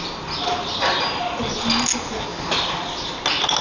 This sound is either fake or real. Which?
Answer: real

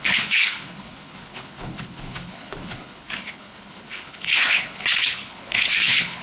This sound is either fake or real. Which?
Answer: fake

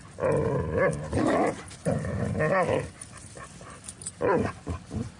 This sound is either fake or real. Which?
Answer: real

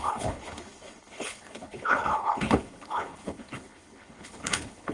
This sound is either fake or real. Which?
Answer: fake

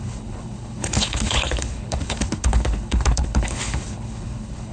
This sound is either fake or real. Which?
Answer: fake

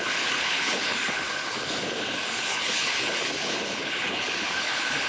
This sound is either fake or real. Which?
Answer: fake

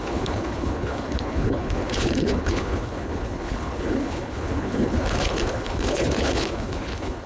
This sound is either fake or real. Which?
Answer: fake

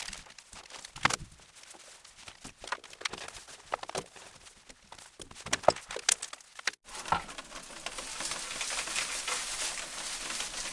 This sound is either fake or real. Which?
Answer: real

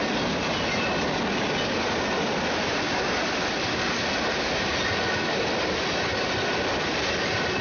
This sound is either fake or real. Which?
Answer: real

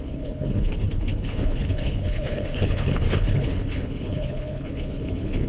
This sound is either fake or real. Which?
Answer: fake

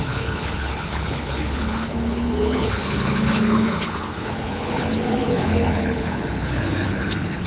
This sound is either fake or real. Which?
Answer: fake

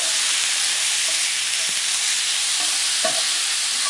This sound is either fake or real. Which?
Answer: real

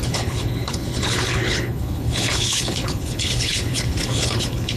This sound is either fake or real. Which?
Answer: fake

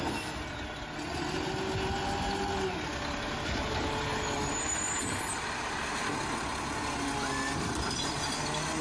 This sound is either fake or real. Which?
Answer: real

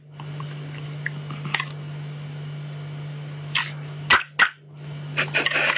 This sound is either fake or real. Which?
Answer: real